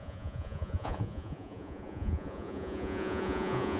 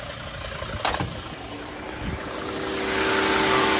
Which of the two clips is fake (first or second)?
first